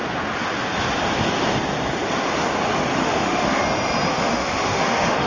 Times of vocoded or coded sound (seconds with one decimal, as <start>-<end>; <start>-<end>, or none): 3.0-3.6; 4.1-5.3